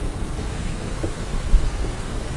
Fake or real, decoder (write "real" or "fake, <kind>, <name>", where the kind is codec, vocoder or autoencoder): fake, codec, SNAC